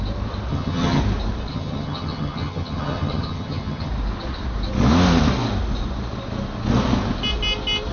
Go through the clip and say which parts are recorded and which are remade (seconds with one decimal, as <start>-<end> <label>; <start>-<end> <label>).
0.0-0.5 recorded; 0.5-1.0 remade; 1.0-1.5 recorded; 1.5-3.9 remade; 3.9-7.9 recorded